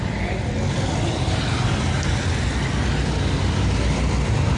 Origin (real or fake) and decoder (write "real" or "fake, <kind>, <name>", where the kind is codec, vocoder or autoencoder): real